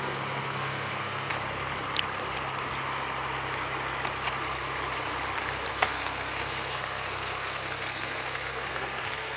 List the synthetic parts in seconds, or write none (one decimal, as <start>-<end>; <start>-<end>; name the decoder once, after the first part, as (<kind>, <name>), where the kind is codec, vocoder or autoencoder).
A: 0.0-1.3 (codec, SNAC); 5.7-9.4